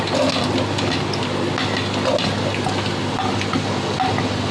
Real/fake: real